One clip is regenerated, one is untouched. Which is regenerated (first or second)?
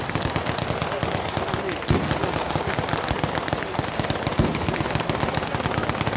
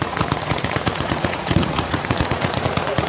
second